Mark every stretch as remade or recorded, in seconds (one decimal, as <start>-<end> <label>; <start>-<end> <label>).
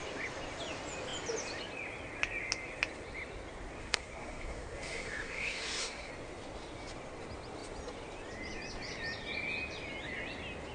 0.0-3.8 recorded; 3.8-6.1 remade; 6.1-10.7 recorded